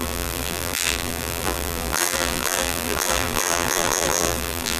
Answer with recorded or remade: remade